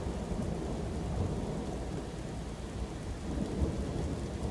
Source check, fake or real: real